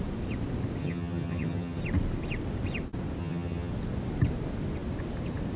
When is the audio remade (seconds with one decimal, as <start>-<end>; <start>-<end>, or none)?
0.8-1.8; 3.2-3.7